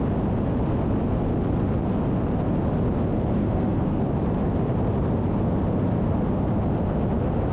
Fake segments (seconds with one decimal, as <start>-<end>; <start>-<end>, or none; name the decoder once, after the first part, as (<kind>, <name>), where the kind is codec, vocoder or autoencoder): 3.4-4.0 (codec, SNAC)